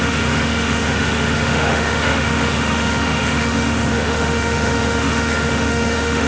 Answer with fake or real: fake